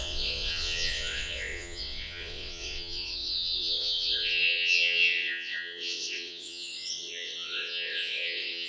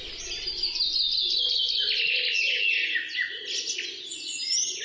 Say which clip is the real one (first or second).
second